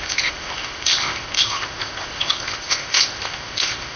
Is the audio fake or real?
fake